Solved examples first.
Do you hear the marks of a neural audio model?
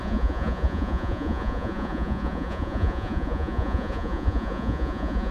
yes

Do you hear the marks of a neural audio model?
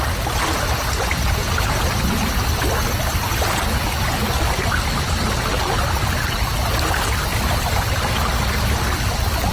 no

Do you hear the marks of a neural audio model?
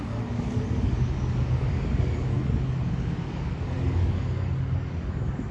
yes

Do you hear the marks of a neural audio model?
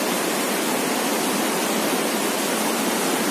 no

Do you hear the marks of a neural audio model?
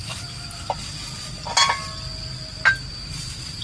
no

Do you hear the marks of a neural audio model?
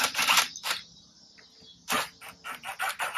no